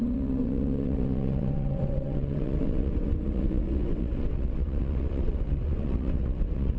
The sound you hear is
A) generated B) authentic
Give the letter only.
A